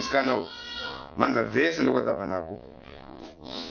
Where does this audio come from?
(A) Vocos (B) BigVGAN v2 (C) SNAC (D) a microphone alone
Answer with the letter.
A